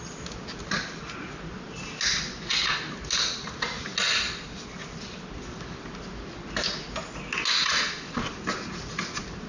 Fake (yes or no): no